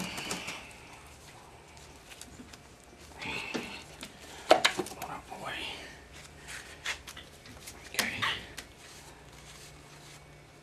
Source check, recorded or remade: recorded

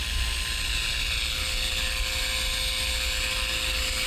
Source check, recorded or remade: recorded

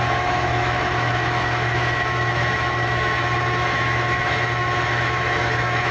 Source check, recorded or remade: remade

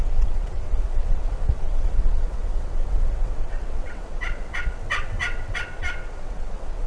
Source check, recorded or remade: remade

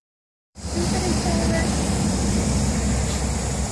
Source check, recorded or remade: remade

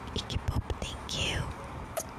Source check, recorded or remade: recorded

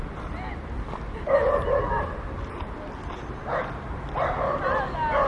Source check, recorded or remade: recorded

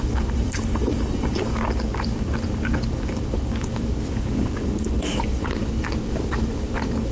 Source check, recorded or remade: remade